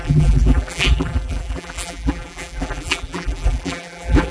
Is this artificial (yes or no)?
yes